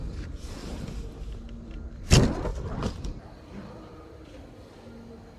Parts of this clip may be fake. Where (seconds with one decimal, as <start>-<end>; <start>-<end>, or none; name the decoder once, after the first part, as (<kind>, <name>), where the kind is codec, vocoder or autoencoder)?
0.6-1.1 (vocoder, BigVGAN v2); 2.5-3.9